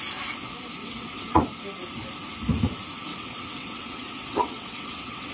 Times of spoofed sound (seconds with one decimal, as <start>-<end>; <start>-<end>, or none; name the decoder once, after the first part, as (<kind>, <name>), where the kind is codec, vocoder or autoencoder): 0.8-1.4 (vocoder, WaveNeXt); 3.1-5.3